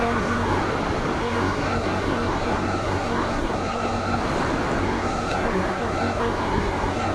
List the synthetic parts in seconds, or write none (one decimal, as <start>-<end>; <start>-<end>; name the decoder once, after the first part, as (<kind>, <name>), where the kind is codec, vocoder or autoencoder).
0.0-0.6 (codec, SNAC); 1.2-4.2; 4.8-7.1